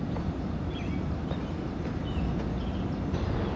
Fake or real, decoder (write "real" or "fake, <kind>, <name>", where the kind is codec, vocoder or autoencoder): real